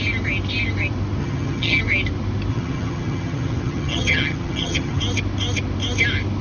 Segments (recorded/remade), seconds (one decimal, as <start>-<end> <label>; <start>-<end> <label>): 0.0-1.2 recorded; 1.2-1.8 remade; 1.8-2.5 recorded; 2.5-5.0 remade; 5.0-6.4 recorded